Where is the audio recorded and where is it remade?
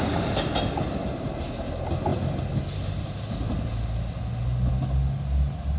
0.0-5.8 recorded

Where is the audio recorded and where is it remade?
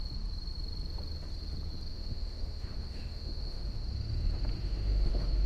0.0-1.9 recorded; 1.9-3.8 remade; 3.8-4.6 recorded; 4.6-5.5 remade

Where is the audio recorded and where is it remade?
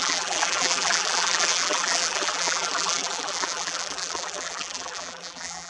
0.0-5.7 remade